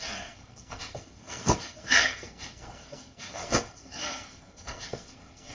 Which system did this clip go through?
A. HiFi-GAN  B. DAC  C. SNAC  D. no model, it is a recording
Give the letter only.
C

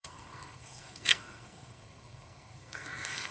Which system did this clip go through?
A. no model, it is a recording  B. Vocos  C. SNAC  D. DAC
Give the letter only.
C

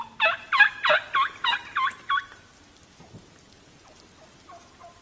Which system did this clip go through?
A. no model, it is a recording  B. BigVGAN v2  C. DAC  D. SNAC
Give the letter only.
A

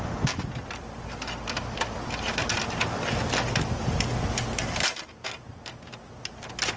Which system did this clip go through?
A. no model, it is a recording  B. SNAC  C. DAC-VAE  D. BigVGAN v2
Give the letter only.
A